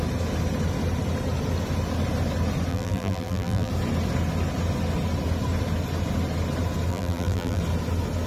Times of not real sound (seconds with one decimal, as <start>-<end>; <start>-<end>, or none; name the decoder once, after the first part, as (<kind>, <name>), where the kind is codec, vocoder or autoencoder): 2.7-3.7 (vocoder, BigVGAN v2); 6.9-7.6